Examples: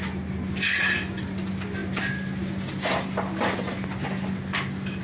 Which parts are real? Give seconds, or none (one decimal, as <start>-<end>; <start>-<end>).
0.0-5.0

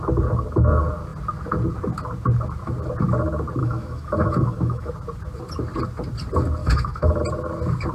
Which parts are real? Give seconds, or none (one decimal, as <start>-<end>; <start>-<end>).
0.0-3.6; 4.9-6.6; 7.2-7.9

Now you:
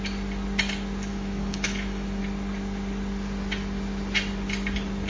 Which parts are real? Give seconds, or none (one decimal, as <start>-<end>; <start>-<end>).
0.0-1.1; 2.2-5.1

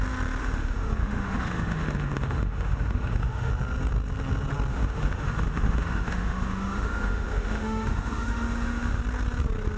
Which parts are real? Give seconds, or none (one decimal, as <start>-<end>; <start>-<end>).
0.0-0.4; 3.5-4.7; 9.0-9.8

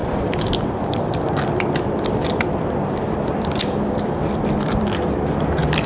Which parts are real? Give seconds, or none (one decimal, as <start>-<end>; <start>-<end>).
none

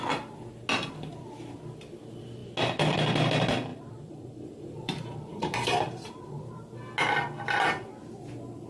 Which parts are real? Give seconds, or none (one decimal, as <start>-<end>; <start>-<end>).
0.0-3.7; 5.9-8.7